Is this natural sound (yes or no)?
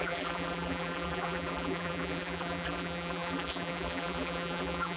no